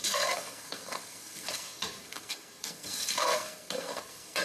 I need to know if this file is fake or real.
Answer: fake